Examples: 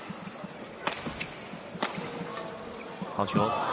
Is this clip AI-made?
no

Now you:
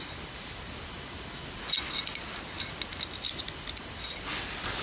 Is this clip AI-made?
no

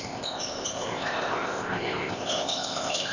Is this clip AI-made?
yes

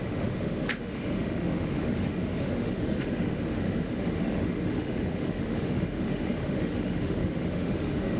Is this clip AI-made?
yes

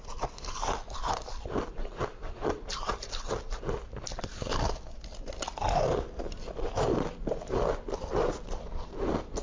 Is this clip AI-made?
no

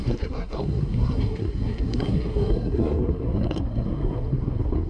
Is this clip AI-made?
yes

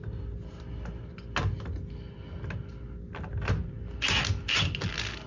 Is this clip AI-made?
no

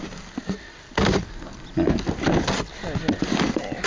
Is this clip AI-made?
no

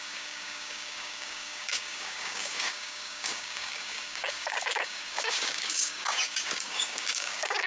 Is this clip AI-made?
yes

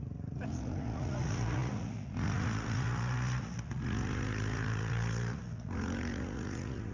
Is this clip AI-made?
yes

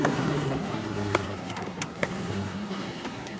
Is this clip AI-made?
yes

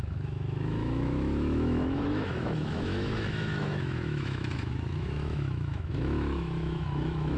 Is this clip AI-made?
yes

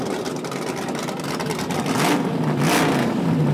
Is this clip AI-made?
no